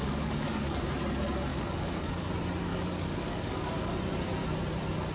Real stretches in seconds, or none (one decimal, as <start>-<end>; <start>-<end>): 0.7-1.5; 2.3-2.7; 3.9-5.1